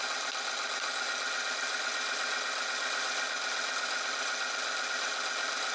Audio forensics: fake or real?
real